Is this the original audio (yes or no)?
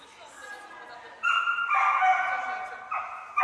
yes